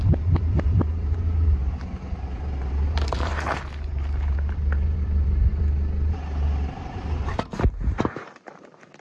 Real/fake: fake